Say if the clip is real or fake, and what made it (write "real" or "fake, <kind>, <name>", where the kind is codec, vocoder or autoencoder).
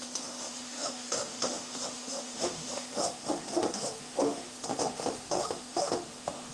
fake, autoencoder, DAC-VAE